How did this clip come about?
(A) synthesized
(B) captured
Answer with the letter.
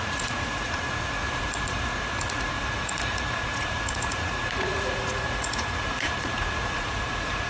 A